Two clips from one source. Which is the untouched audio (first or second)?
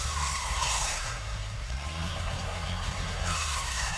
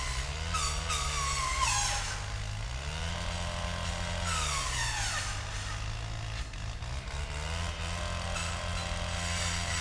second